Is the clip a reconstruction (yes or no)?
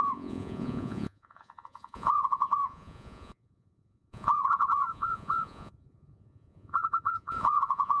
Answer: yes